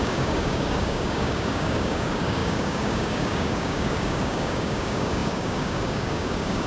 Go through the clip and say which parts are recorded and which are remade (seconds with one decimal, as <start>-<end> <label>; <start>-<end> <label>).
0.0-6.7 remade